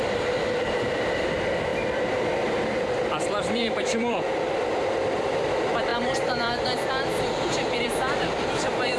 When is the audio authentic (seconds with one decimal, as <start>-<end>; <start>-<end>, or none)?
1.7-3.1